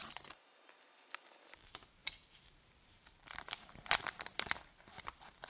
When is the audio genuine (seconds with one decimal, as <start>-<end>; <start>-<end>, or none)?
0.0-2.0; 4.2-5.5